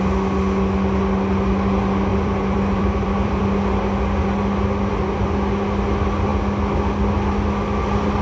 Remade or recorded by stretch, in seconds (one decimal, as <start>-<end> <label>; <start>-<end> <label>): 0.0-2.1 recorded; 2.1-3.4 remade; 3.4-8.2 recorded